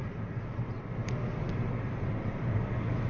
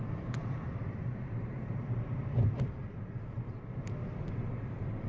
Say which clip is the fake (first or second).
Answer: second